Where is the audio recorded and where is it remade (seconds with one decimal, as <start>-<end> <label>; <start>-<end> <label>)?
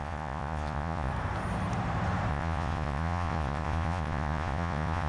0.0-1.1 remade; 1.1-2.3 recorded; 2.3-5.1 remade